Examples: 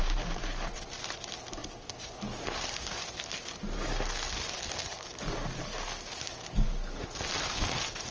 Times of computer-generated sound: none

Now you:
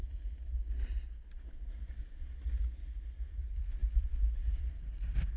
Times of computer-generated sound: none

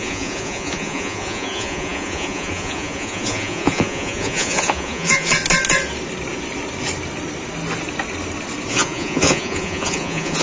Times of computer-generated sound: 0.0-5.3 (vocoder, Vocos); 8.7-10.4

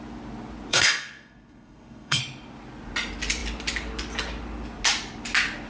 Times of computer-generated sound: 0.7-2.2 (codec, SNAC)